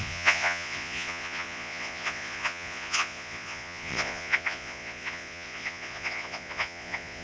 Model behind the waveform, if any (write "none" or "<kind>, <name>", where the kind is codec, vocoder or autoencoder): vocoder, Vocos